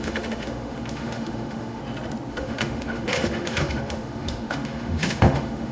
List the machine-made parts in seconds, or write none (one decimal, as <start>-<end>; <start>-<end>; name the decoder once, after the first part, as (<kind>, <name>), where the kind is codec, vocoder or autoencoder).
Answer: 0.0-1.8 (autoencoder, DAC-VAE); 2.3-5.7